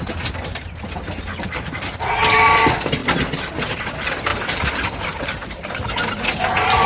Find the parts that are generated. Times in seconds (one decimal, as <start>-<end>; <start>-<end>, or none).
0.5-1.2; 4.3-6.9